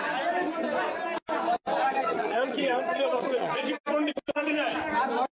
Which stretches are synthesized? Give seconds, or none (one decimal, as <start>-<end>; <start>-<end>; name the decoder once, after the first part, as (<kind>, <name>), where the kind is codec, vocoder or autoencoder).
2.0-3.6 (vocoder, Vocos)